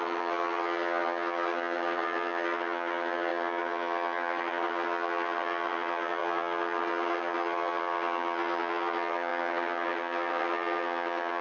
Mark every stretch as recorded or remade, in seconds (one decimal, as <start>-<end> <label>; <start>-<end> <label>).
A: 0.0-11.4 remade